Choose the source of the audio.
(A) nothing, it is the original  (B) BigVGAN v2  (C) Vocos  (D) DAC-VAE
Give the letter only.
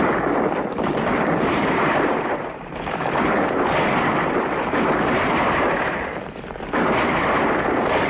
B